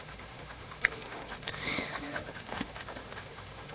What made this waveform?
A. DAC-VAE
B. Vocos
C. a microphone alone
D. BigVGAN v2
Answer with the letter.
A